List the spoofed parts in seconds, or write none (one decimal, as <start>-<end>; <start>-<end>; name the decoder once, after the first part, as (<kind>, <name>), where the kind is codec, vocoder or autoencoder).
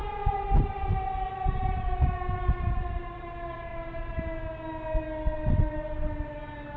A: 0.0-3.7 (vocoder, BigVGAN v2)